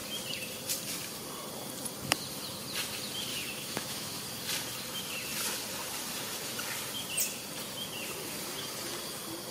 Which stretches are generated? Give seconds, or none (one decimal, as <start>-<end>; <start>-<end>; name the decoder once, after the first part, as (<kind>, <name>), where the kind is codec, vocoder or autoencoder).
3.3-4.2 (autoencoder, DAC-VAE)